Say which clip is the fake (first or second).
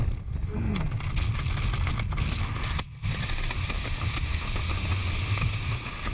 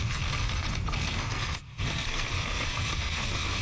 second